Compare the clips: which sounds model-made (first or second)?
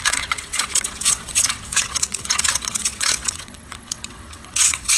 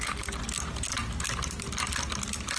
first